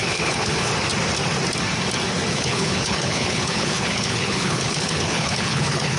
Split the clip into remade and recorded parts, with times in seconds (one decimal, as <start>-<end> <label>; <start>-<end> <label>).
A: 0.0-0.7 remade; 0.7-2.3 recorded; 2.3-6.0 remade